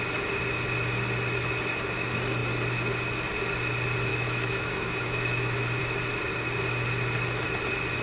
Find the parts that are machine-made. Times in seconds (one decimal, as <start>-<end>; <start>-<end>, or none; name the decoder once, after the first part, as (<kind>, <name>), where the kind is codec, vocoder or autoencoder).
4.1-5.8 (autoencoder, DAC-VAE)